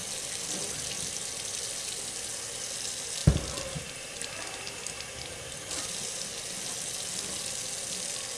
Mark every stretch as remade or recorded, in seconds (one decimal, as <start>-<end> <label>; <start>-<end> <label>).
0.0-8.4 recorded

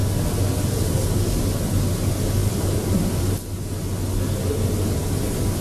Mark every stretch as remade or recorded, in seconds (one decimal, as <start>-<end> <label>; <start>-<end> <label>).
0.0-1.7 remade; 1.7-2.4 recorded; 2.4-5.6 remade

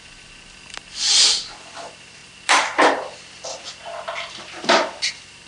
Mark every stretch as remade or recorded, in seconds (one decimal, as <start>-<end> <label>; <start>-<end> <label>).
0.0-5.5 remade